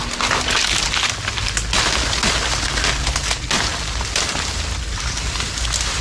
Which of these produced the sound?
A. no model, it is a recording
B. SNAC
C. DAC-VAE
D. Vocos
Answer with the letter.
A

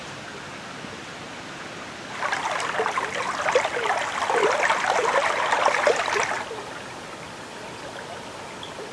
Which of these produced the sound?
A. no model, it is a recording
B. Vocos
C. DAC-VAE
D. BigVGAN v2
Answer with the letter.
A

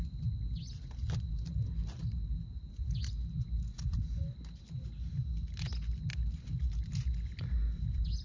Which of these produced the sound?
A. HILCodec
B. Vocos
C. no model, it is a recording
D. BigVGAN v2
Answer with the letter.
C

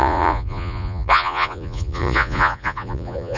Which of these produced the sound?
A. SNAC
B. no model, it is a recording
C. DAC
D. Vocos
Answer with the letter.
D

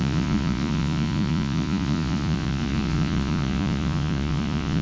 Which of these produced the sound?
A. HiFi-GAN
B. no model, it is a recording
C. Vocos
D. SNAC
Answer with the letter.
C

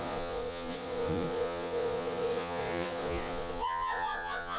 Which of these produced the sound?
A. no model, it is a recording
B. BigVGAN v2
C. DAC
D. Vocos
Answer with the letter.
D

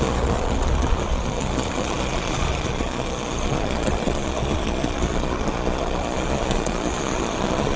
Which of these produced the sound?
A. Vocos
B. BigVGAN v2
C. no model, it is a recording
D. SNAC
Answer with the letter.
A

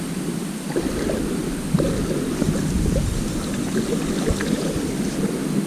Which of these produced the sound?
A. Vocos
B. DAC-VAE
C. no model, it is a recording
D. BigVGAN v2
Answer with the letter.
C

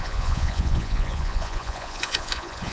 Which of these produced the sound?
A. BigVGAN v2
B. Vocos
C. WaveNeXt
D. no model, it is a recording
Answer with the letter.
B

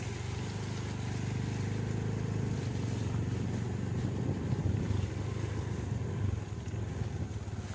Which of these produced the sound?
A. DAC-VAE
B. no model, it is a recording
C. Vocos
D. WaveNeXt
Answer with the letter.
B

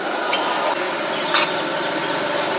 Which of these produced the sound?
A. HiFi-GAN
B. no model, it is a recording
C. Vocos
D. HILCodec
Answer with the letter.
B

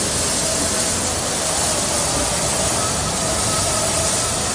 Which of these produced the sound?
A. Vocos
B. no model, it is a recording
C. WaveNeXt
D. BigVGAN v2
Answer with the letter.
B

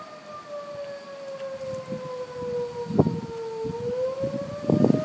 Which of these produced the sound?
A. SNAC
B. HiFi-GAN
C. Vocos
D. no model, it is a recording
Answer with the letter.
D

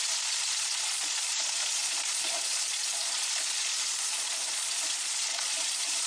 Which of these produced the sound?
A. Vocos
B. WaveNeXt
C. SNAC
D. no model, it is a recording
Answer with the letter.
A